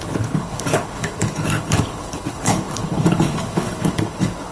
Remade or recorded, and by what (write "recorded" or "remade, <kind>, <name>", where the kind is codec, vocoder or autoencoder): remade, codec, HILCodec